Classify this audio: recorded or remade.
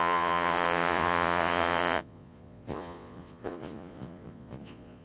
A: remade